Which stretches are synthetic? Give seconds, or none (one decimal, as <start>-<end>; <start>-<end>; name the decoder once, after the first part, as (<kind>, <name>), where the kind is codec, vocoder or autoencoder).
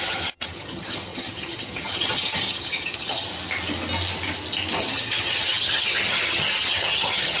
0.0-3.3 (vocoder, HiFi-GAN); 4.8-7.4